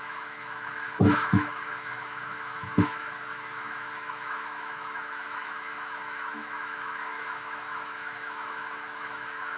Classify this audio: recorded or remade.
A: remade